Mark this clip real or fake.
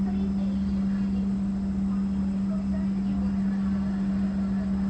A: real